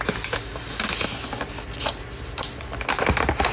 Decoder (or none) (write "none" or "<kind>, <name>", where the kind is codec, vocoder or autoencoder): none